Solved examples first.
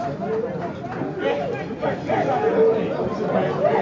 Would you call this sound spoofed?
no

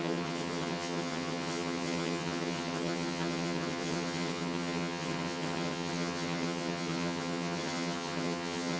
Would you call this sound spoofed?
yes